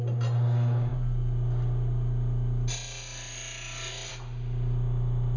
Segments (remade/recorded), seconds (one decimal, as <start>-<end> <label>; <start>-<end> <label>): 0.0-5.4 recorded